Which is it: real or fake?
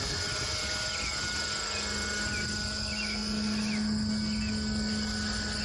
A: real